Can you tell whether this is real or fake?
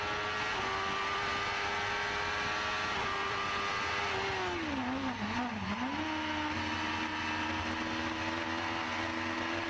real